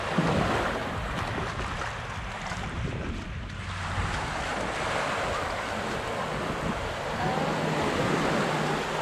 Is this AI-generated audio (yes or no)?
no